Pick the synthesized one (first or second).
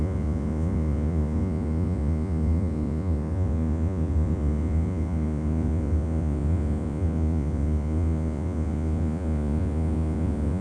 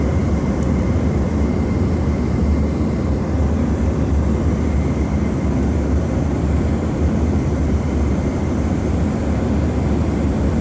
first